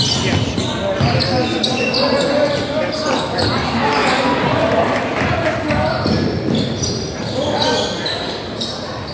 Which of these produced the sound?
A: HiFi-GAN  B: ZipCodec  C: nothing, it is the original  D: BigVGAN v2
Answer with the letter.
C